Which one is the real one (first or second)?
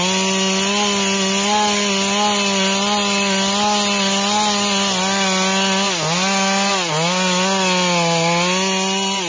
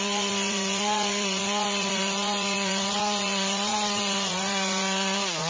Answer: first